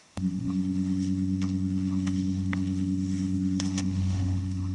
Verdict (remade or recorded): remade